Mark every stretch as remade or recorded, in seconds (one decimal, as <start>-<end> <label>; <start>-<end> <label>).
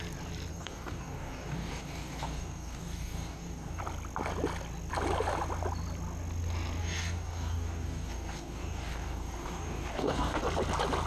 0.0-0.5 recorded; 0.5-3.8 remade; 3.8-6.8 recorded; 6.8-10.4 remade; 10.4-11.1 recorded